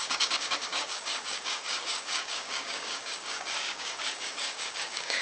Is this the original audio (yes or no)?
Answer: no